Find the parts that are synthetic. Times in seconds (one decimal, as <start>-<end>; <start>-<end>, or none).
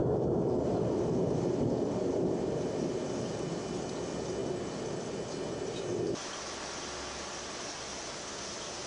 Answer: 0.0-3.0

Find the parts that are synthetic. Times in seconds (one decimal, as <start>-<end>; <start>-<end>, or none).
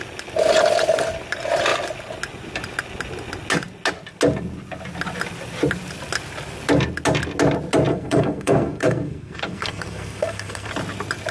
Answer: 7.9-10.7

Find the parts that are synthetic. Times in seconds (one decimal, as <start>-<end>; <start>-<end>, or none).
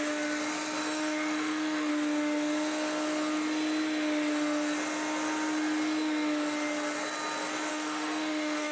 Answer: 0.8-1.9; 7.7-8.7